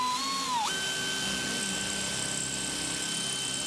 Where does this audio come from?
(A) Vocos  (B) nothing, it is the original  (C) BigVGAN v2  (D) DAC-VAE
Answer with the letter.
B